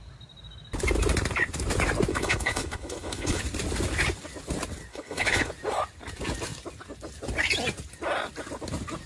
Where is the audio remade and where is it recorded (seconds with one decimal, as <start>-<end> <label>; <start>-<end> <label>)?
0.0-2.1 recorded; 2.1-3.4 remade; 3.4-4.9 recorded; 4.9-5.5 remade; 5.5-9.1 recorded